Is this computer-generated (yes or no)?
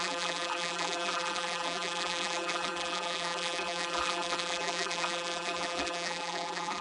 yes